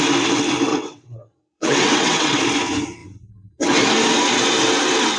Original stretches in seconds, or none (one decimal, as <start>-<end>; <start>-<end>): 0.0-0.7; 2.4-5.2